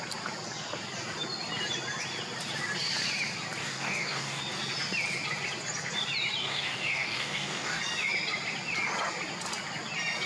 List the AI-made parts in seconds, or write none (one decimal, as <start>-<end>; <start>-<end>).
3.6-4.4; 6.4-7.8